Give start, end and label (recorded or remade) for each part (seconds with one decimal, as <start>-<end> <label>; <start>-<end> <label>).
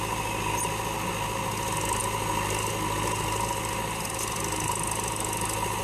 0.0-5.8 recorded